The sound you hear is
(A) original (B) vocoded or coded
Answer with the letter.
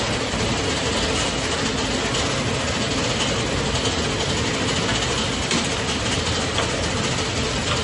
A